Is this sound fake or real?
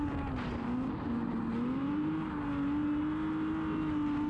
real